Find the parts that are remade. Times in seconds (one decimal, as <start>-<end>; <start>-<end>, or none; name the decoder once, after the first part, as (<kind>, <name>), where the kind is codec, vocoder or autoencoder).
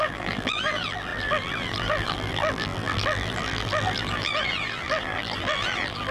0.0-6.1 (vocoder, BigVGAN v2)